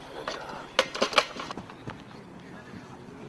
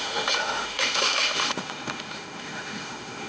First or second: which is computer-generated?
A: second